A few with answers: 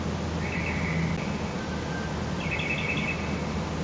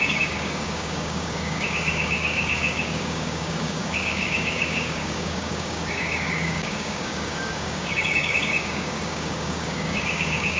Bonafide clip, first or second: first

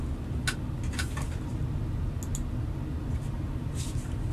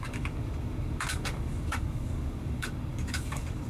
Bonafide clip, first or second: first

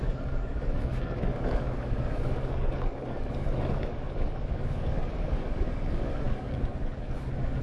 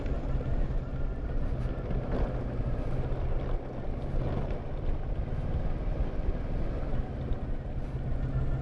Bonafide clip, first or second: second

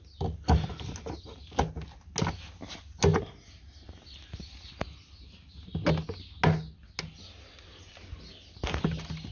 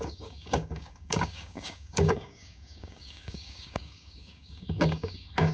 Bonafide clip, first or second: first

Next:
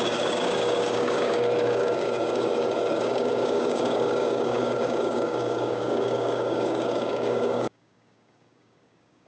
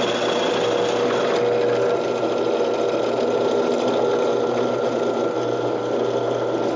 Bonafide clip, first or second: second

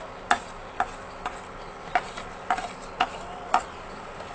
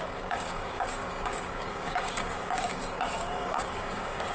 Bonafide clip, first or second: first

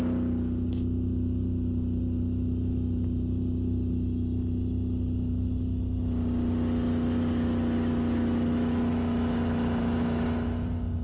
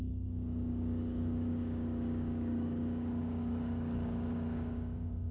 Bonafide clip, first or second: first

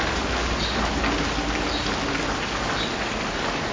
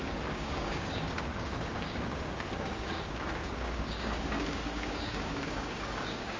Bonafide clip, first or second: first